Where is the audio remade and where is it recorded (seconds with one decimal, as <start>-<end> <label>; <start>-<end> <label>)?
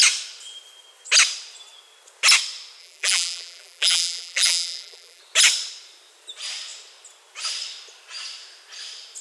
0.0-2.8 recorded; 2.8-5.2 remade; 5.2-9.2 recorded